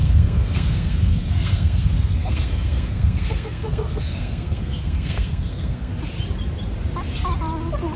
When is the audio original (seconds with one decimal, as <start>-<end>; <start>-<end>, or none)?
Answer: 5.9-8.0